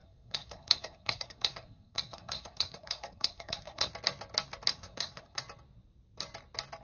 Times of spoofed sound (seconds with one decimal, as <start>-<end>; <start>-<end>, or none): 0.0-3.9; 4.7-5.4